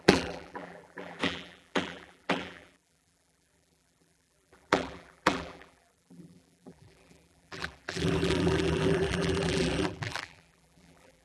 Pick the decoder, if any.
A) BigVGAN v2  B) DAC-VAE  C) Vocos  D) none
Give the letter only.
A